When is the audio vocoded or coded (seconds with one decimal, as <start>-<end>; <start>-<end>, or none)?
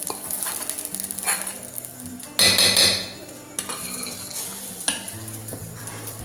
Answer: 0.0-0.6; 5.4-6.2